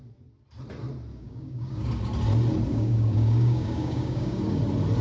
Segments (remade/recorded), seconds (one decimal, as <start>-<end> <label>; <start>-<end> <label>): 0.0-1.1 recorded; 1.1-1.9 remade; 1.9-2.7 recorded; 2.7-4.6 remade; 4.6-5.0 recorded